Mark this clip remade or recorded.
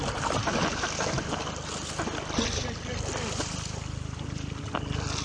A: recorded